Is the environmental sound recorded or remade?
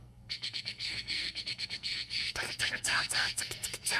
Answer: remade